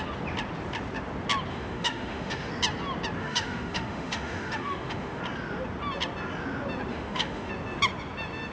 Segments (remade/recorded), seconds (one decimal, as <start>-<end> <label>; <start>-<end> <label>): 0.0-1.5 recorded; 1.5-2.5 remade; 2.5-3.2 recorded; 3.2-5.2 remade; 5.2-6.9 recorded; 6.9-7.5 remade; 7.5-8.5 recorded